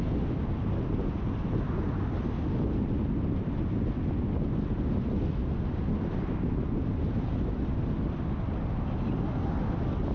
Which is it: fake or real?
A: real